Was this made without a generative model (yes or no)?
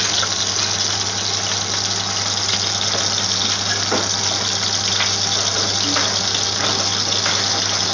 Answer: yes